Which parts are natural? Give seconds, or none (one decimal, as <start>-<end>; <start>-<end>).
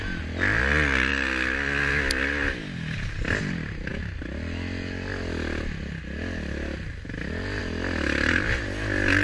0.0-9.2